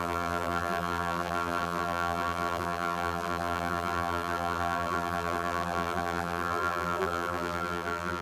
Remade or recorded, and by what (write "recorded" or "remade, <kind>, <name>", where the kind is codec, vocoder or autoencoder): remade, vocoder, BigVGAN v2